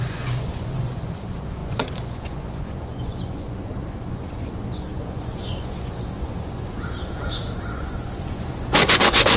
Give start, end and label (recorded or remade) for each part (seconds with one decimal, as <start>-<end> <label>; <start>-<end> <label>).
0.0-9.4 remade